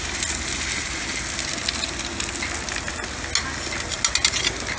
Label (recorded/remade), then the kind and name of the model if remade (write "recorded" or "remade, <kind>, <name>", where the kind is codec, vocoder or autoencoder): recorded